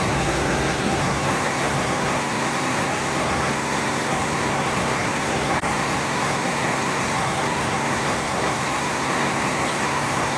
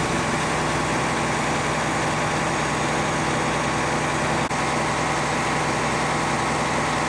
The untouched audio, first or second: second